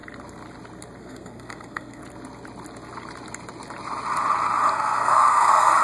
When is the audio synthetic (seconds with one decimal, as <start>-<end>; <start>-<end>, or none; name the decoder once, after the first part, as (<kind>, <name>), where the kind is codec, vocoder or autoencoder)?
1.0-2.0 (codec, SNAC); 4.7-5.8